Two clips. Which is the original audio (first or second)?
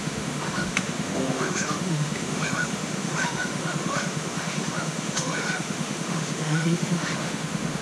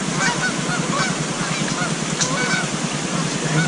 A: second